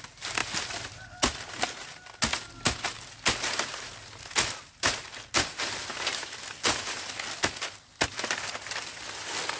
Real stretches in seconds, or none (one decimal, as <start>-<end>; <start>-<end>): 0.0-9.6